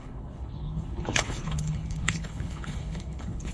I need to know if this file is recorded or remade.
remade